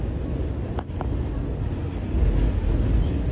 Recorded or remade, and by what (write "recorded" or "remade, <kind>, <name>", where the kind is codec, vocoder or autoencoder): recorded